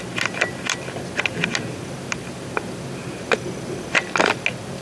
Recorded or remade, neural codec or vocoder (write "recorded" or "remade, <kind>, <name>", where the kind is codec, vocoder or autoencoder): recorded